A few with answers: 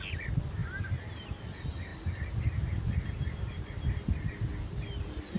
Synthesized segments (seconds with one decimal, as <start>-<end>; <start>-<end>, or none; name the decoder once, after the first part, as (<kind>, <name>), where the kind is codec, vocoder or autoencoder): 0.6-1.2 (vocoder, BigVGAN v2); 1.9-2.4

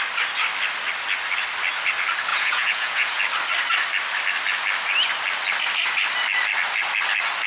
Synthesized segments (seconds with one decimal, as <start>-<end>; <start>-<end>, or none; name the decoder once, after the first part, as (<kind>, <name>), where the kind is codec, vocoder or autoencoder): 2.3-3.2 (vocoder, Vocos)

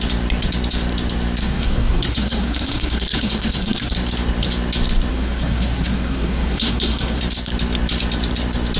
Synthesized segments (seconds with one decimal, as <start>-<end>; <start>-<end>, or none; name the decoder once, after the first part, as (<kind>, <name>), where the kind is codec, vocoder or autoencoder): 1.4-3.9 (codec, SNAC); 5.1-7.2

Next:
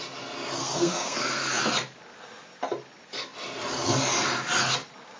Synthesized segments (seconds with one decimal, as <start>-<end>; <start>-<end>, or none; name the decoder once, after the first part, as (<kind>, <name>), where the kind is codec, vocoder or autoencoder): 0.6-1.6 (codec, SNAC)

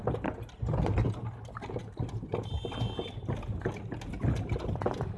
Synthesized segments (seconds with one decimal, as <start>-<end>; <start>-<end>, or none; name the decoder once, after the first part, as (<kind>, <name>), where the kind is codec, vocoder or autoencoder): none

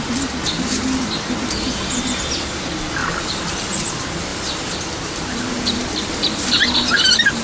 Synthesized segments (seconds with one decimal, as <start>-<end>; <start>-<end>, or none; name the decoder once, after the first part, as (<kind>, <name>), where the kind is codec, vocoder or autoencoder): 3.0-3.8 (vocoder, BigVGAN v2); 4.3-6.5